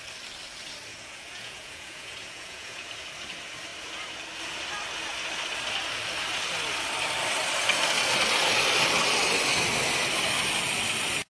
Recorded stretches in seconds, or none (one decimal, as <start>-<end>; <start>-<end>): 0.0-0.9; 2.9-11.4